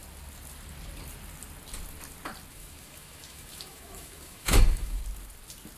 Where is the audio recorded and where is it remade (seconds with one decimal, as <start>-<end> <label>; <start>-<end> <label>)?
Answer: 0.0-2.5 recorded; 2.5-5.0 remade; 5.0-5.8 recorded